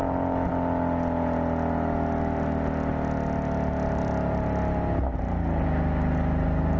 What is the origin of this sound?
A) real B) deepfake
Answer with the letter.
A